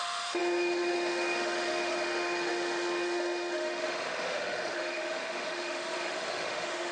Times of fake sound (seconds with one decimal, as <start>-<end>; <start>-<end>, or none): 0.0-6.9